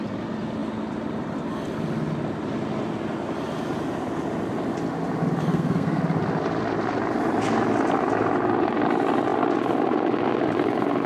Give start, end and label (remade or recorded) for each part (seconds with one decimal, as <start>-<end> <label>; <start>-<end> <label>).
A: 0.0-5.5 recorded; 5.5-6.0 remade; 6.0-11.1 recorded